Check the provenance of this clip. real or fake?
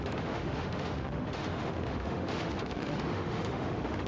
fake